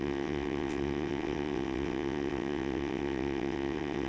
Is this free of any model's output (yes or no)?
no